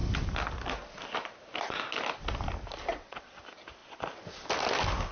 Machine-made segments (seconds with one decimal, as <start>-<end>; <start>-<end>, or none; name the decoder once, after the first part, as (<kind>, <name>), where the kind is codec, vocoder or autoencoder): 2.9-3.4 (vocoder, WaveNeXt)